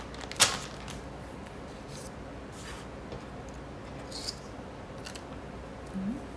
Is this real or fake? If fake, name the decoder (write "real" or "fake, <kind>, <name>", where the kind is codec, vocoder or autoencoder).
real